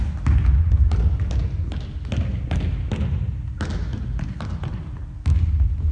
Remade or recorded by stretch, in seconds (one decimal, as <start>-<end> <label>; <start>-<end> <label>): 0.0-5.9 recorded

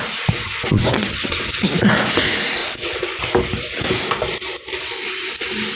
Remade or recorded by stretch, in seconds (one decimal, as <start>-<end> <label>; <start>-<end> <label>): 0.0-0.5 recorded; 0.5-1.4 remade; 1.4-2.6 recorded; 2.6-3.2 remade; 3.2-5.7 recorded